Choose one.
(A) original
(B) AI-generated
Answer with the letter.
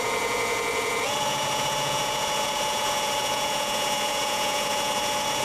B